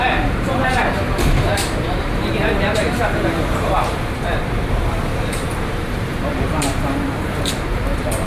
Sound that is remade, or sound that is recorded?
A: remade